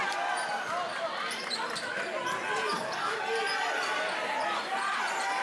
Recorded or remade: recorded